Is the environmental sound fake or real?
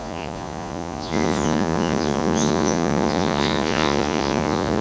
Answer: fake